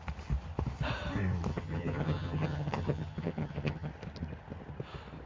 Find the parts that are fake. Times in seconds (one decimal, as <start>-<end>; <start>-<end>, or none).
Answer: 1.5-3.9